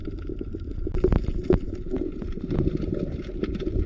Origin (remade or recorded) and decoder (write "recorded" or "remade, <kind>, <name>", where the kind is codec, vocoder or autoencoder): recorded